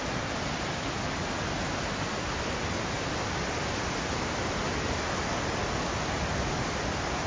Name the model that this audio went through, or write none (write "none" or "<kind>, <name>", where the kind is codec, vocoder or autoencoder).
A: none